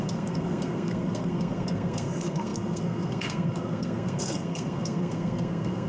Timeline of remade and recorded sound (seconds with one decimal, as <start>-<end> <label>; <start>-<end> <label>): 0.0-5.9 remade